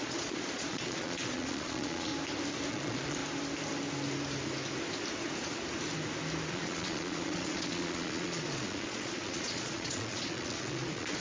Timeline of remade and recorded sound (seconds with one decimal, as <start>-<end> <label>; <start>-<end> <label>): 0.0-2.1 remade; 2.1-2.7 recorded; 2.7-3.2 remade; 3.2-6.5 recorded; 6.5-11.2 remade